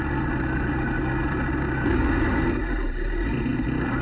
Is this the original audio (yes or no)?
yes